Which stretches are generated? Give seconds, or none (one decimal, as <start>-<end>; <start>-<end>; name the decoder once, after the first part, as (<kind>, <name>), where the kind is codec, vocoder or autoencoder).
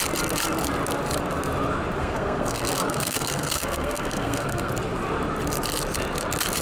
2.0-4.7 (codec, SNAC)